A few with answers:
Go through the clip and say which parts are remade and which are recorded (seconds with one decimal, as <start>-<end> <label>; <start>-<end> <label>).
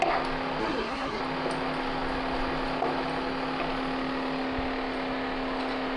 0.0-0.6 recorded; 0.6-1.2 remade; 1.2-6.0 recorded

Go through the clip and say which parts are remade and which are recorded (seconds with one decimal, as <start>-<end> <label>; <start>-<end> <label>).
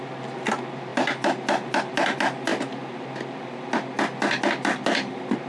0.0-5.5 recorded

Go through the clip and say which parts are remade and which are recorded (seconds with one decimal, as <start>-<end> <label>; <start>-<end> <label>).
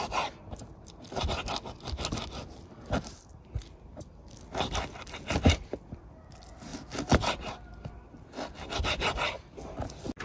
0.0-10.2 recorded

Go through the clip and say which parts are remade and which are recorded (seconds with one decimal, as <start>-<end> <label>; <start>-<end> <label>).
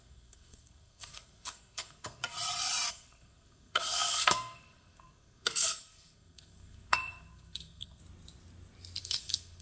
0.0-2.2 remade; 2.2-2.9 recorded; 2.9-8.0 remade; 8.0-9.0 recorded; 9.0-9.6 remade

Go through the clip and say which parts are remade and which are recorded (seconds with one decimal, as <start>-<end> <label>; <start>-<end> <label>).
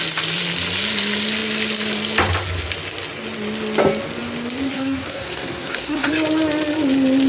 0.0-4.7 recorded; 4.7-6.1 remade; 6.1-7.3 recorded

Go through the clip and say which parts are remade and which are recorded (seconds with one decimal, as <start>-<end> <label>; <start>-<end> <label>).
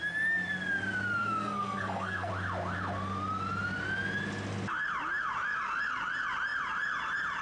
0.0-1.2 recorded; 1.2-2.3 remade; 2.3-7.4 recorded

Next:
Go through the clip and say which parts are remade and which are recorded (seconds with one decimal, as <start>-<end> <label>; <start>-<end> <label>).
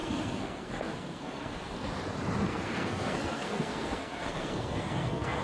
0.0-1.9 remade; 1.9-2.5 recorded; 2.5-5.4 remade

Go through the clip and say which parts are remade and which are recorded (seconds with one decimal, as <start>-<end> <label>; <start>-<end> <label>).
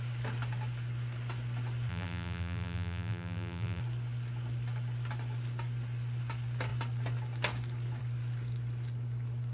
0.0-1.9 recorded; 1.9-3.8 remade; 3.8-9.5 recorded